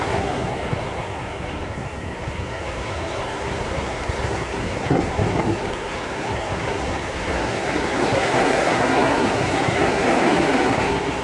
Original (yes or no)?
no